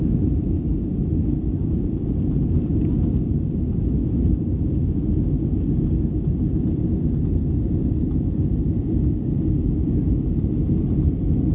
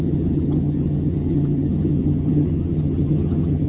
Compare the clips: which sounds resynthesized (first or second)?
second